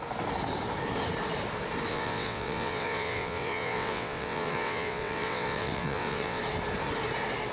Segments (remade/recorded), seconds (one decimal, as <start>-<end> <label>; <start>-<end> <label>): 0.0-1.9 recorded; 1.9-6.4 remade; 6.4-7.5 recorded